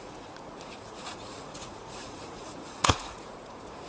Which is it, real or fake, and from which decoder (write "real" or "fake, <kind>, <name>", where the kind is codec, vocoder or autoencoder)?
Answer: fake, vocoder, Vocos